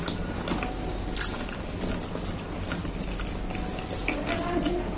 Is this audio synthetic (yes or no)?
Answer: no